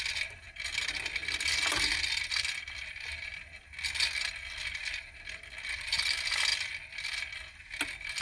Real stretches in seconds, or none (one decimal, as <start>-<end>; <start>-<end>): 0.0-8.2

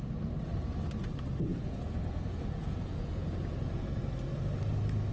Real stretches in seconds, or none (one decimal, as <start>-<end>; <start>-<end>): 0.0-1.5; 4.0-5.1

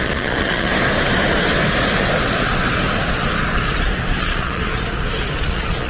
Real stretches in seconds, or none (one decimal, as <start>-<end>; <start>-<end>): 0.7-4.2; 4.7-5.4

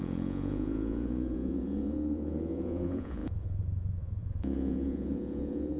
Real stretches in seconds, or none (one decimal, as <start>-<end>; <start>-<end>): none

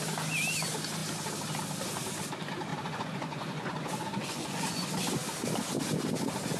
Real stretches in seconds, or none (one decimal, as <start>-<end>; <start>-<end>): 0.0-2.7; 4.9-6.6

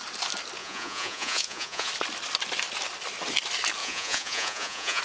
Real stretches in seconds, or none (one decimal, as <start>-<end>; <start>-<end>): 0.0-0.6; 1.9-3.8